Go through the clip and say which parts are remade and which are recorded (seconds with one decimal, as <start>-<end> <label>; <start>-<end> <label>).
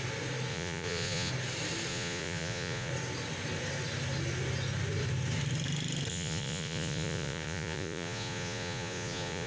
0.0-0.5 recorded; 0.5-1.3 remade; 1.3-1.9 recorded; 1.9-2.9 remade; 2.9-6.1 recorded; 6.1-9.5 remade